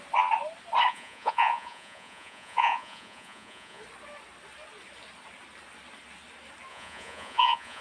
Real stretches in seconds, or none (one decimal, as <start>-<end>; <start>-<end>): 0.0-0.9; 3.8-6.7